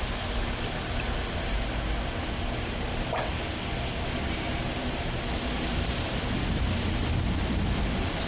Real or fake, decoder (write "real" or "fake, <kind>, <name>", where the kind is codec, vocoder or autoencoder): real